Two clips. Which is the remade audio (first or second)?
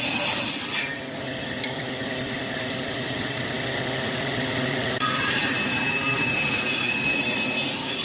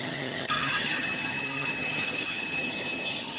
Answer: second